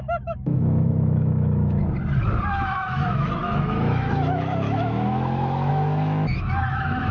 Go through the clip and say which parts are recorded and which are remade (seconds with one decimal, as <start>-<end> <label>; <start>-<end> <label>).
0.0-1.8 remade; 1.8-2.5 recorded; 2.5-7.1 remade